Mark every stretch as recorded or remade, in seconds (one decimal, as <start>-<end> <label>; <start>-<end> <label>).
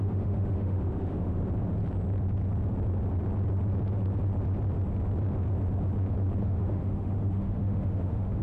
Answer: 0.0-1.4 remade; 1.4-6.4 recorded; 6.4-8.4 remade